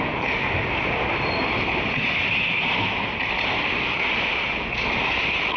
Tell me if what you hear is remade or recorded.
recorded